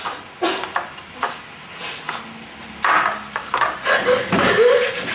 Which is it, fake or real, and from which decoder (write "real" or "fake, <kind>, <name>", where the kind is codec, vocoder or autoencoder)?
real